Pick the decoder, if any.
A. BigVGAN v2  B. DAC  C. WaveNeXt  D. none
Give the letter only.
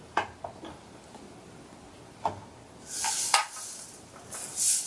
D